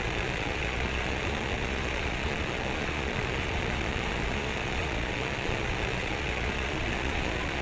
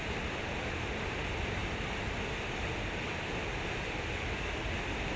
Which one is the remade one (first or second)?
first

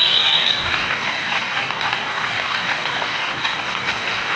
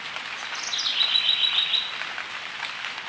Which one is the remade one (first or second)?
first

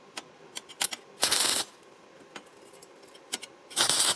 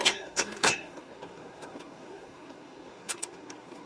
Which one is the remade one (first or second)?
second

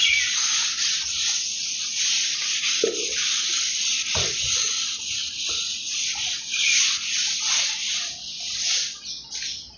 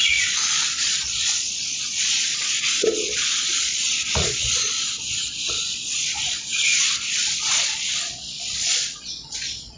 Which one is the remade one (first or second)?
second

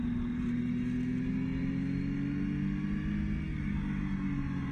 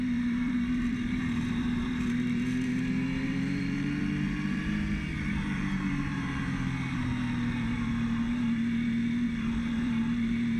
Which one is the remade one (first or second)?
second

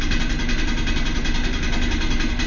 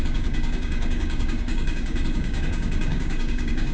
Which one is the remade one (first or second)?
second